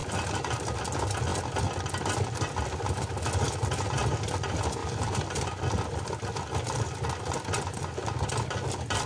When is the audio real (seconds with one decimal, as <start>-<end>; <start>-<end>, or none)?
0.8-4.8; 5.6-9.1